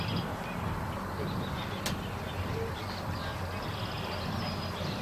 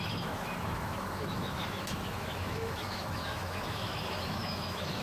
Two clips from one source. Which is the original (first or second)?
first